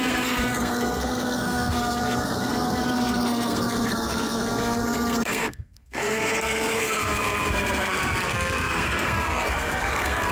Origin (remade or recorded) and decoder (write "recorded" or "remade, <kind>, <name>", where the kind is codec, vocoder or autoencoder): remade, codec, SNAC